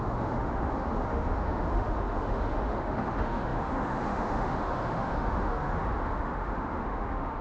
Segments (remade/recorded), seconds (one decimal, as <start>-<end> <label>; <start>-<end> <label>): 0.0-7.4 remade